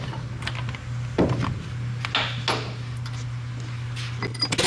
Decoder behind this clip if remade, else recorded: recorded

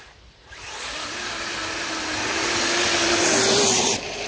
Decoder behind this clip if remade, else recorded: recorded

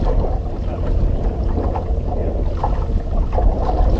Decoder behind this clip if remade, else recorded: recorded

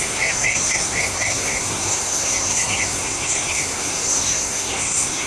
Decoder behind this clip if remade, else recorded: remade, codec, SNAC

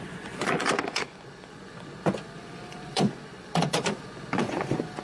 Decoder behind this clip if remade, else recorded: remade, vocoder, Vocos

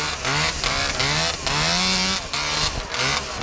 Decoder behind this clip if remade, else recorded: recorded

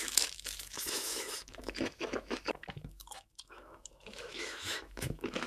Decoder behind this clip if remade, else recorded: remade, autoencoder, DAC-VAE